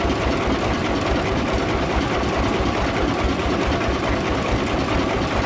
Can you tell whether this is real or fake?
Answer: real